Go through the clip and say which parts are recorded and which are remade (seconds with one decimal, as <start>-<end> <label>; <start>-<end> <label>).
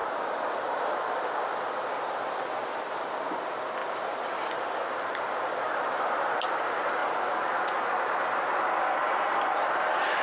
0.0-10.2 recorded